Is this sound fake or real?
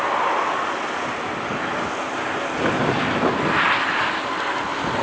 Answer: real